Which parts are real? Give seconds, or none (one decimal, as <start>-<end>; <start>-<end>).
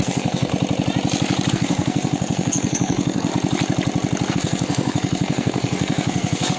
0.5-1.5; 3.3-4.3